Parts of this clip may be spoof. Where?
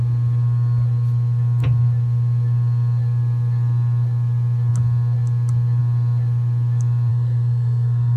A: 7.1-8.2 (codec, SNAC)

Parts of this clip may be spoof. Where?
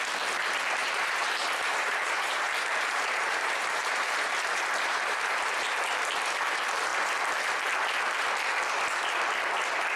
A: 0.8-5.8 (vocoder, BigVGAN v2)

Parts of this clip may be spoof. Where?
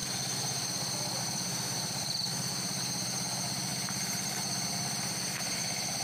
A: 1.2-3.7 (vocoder, BigVGAN v2); 4.7-6.0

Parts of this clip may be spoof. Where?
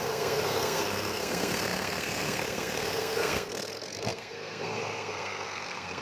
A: 0.0-6.0 (codec, SNAC)